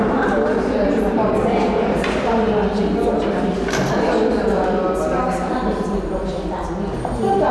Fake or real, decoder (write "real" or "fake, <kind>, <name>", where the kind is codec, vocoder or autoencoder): real